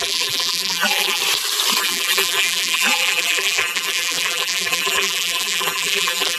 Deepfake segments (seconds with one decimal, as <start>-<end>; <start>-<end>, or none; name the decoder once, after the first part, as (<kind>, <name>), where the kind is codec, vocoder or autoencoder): 0.0-1.2 (vocoder, BigVGAN v2); 1.8-6.4